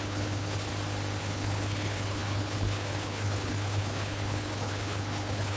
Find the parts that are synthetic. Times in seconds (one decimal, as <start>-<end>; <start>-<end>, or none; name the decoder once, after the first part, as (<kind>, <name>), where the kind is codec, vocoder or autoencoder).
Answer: 0.0-0.7 (codec, HILCodec); 1.2-5.6